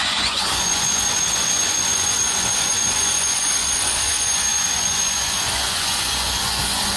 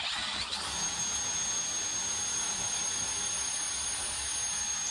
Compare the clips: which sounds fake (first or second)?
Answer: first